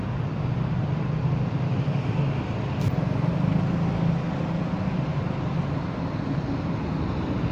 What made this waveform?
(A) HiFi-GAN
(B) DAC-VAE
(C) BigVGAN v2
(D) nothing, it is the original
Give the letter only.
D